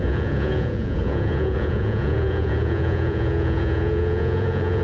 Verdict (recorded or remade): remade